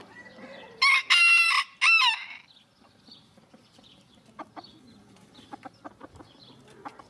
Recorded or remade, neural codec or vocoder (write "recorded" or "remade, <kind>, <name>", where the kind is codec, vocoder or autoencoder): recorded